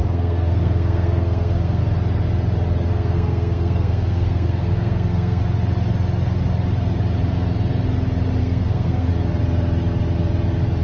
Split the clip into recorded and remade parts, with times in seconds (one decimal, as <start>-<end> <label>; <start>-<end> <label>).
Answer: 0.0-1.8 remade; 1.8-2.9 recorded; 2.9-5.4 remade; 5.4-8.4 recorded; 8.4-9.1 remade; 9.1-10.8 recorded